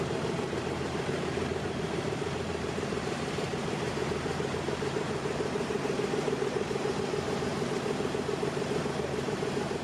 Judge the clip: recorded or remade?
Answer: remade